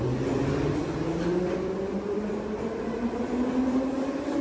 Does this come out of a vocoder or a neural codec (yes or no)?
no